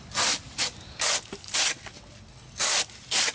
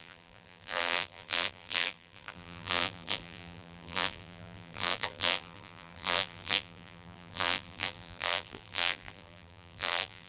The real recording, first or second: first